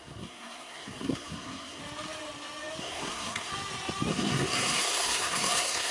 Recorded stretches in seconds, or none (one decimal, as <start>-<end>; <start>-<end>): 1.8-2.8; 3.5-4.1